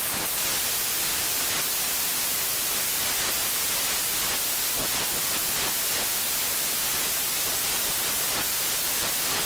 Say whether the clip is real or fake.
real